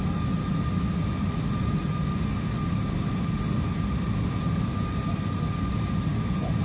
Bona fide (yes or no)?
yes